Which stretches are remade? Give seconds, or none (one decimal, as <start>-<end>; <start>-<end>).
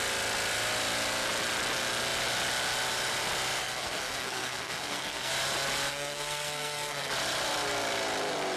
3.6-5.3; 5.9-7.1